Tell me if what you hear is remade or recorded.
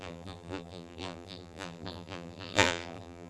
remade